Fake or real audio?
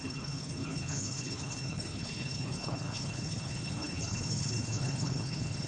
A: fake